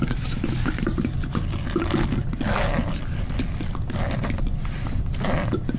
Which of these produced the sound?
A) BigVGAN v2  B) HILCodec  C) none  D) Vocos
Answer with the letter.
C